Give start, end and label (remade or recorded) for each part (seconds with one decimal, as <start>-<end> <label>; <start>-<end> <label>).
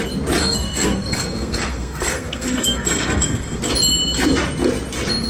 0.0-0.4 recorded; 0.4-3.6 remade; 3.6-5.3 recorded